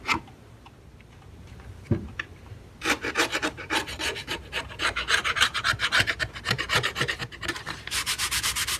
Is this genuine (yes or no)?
no